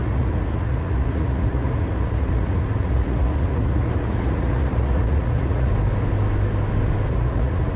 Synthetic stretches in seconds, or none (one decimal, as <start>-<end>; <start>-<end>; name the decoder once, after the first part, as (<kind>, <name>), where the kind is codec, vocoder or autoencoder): 0.0-5.7 (vocoder, Vocos); 7.1-7.8